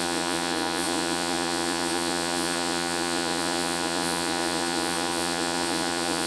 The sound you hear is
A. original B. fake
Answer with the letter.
B